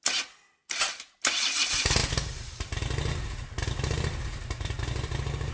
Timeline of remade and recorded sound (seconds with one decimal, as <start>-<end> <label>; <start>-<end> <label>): 0.0-5.5 recorded